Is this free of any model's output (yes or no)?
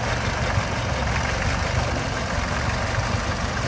yes